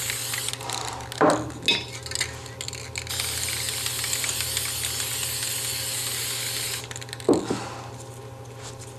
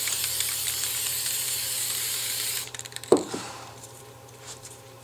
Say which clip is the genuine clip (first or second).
first